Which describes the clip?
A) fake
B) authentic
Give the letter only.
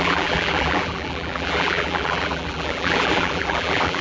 A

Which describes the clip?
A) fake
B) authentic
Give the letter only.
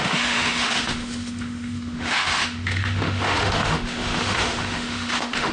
A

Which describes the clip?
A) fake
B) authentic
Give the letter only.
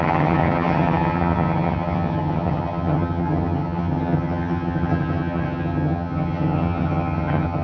A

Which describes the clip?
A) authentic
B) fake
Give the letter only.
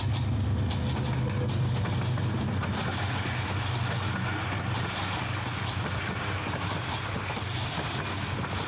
A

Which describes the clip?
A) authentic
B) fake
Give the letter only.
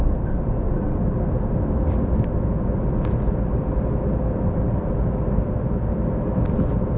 A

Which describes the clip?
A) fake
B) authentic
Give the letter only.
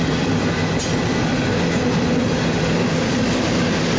B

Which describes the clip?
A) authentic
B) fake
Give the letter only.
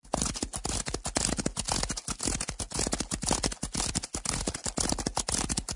A